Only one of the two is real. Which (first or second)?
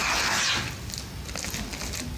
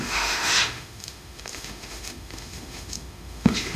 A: first